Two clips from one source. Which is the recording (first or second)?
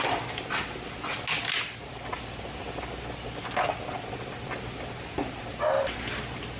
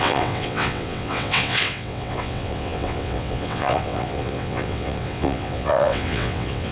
first